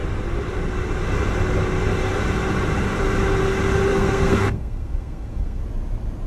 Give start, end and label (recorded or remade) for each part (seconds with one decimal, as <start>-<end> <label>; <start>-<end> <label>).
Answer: 0.0-3.9 recorded; 3.9-5.6 remade; 5.6-6.3 recorded